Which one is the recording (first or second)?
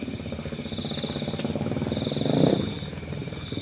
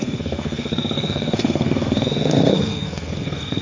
first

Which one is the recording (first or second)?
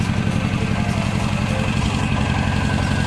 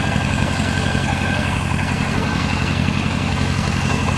first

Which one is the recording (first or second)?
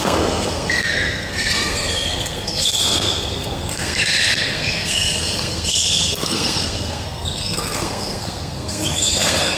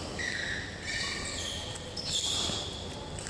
second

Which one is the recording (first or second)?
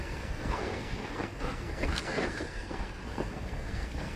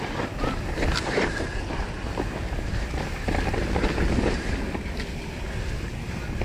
second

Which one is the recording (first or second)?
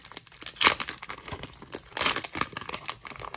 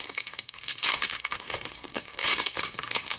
first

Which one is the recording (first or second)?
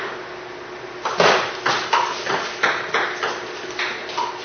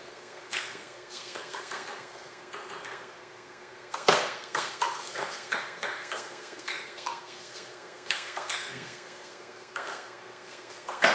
first